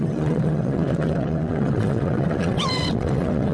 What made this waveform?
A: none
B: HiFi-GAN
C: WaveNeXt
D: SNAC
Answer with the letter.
C